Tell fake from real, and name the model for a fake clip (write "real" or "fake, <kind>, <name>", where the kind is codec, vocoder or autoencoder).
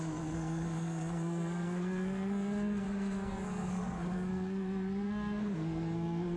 fake, codec, SNAC